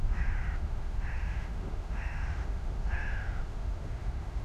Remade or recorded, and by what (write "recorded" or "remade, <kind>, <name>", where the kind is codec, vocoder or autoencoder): remade, autoencoder, DAC-VAE